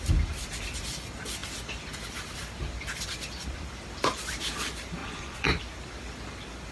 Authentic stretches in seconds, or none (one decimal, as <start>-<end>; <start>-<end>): 0.0-5.0; 5.6-6.7